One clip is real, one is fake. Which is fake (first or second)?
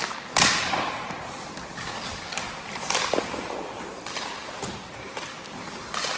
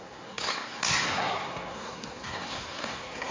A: second